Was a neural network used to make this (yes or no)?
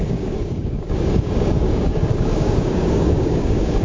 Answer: yes